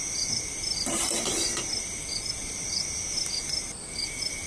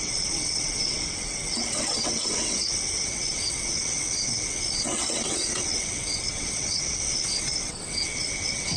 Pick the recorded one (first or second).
first